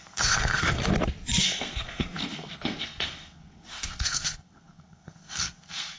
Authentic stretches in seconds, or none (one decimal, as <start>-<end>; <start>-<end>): 0.8-1.4